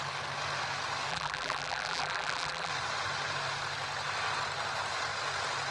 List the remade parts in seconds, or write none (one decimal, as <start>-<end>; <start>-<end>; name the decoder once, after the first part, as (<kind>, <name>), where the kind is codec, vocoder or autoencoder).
1.1-2.7 (vocoder, BigVGAN v2)